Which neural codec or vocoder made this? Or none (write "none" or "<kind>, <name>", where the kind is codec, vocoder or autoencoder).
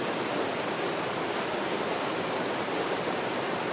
none